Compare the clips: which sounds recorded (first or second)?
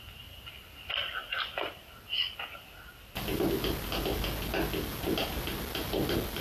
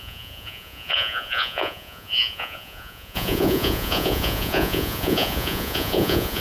first